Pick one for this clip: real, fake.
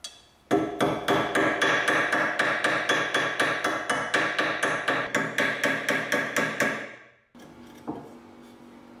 real